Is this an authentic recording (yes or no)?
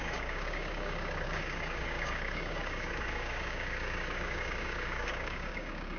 no